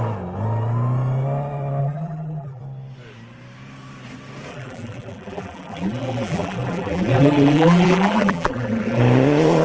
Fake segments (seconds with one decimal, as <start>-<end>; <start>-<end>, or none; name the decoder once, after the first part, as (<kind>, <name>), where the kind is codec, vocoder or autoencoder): 1.8-2.6 (vocoder, BigVGAN v2); 4.5-9.0